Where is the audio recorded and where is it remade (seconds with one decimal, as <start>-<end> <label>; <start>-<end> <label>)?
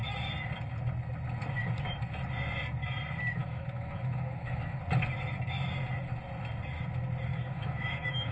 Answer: 0.0-3.4 recorded; 3.4-4.8 remade; 4.8-7.3 recorded; 7.3-8.3 remade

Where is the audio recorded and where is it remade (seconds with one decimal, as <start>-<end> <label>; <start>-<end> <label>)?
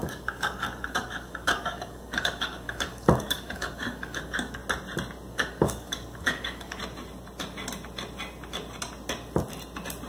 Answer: 0.0-4.6 remade; 4.6-5.3 recorded; 5.3-6.8 remade; 6.8-10.1 recorded